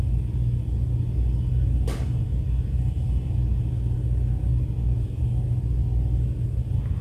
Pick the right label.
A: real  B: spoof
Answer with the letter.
A